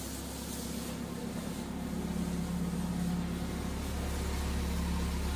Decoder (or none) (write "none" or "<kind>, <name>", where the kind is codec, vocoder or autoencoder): none